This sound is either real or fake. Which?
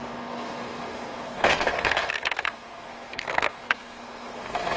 fake